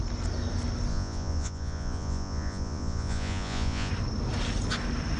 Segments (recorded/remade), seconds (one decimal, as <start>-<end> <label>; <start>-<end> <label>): 0.0-0.9 recorded; 0.9-3.9 remade; 3.9-5.2 recorded